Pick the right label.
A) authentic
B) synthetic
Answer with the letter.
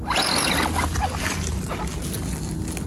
A